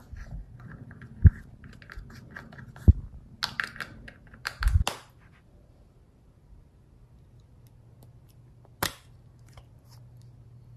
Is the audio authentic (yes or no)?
yes